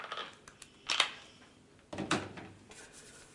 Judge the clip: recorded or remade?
recorded